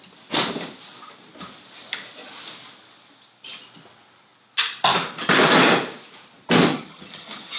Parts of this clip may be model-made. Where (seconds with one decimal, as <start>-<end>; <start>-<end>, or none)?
6.7-7.6